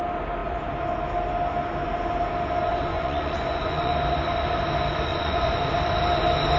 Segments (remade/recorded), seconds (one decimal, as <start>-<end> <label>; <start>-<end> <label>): 0.0-2.7 recorded; 2.7-3.9 remade; 3.9-5.1 recorded; 5.1-5.7 remade; 5.7-6.6 recorded